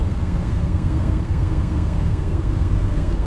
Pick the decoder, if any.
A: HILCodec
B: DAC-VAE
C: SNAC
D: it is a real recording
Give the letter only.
C